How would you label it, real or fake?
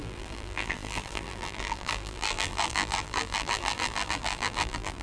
fake